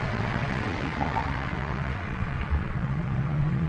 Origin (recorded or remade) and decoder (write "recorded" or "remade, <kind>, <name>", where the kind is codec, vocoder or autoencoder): remade, vocoder, WaveNeXt